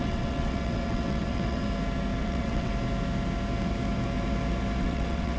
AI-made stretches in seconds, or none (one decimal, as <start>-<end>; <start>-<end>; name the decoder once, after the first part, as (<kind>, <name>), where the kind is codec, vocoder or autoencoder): 0.0-1.6 (vocoder, WaveNeXt); 2.2-2.7; 4.8-5.4